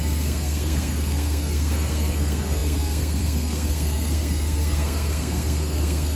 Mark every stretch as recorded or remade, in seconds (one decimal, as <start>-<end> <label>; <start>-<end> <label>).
0.0-6.2 remade